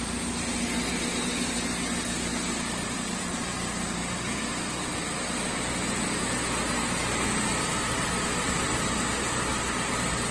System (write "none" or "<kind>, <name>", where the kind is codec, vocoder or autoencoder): none